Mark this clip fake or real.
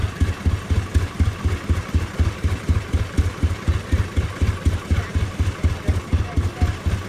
real